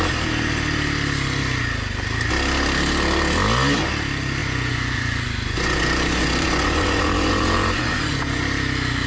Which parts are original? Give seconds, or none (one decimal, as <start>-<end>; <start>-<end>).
0.0-4.4; 8.4-9.1